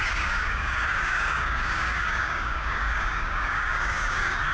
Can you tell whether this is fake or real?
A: fake